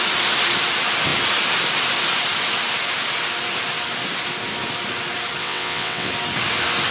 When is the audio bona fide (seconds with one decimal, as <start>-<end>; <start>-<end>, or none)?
0.0-5.4; 6.1-6.9